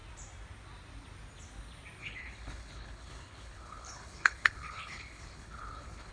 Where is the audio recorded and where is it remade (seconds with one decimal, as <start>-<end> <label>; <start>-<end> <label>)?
0.0-2.0 recorded; 2.0-6.1 remade

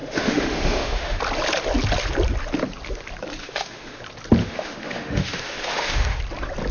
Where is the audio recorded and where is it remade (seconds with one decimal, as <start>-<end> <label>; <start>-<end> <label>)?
0.0-1.2 remade; 1.2-3.4 recorded; 3.4-4.0 remade; 4.0-4.4 recorded; 4.4-6.2 remade; 6.2-6.7 recorded

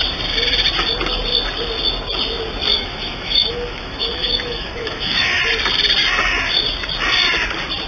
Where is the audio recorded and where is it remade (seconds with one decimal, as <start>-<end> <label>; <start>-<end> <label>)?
0.0-2.7 recorded; 2.7-5.4 remade; 5.4-7.9 recorded

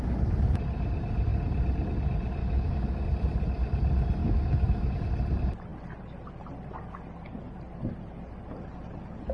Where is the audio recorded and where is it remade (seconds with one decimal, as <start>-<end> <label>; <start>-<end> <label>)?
0.0-2.4 recorded; 2.4-3.0 remade; 3.0-4.2 recorded; 4.2-4.9 remade; 4.9-9.3 recorded